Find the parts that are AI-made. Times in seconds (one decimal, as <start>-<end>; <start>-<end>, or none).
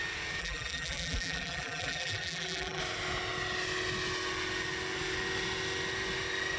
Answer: 0.4-2.8